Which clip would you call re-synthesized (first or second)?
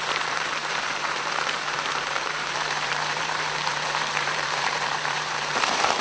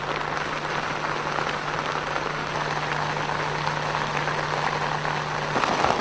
first